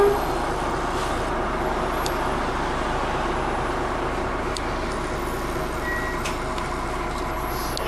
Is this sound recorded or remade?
recorded